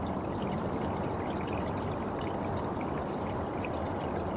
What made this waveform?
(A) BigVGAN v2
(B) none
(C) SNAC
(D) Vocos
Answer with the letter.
B